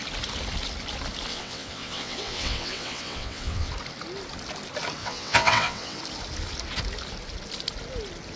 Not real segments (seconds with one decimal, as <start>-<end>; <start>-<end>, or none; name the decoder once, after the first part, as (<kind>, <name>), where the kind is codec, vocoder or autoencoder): 1.3-3.7 (vocoder, WaveNeXt); 5.0-6.0